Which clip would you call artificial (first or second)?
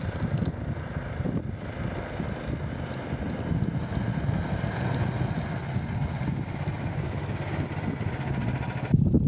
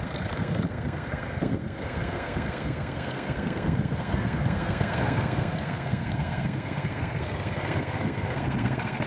second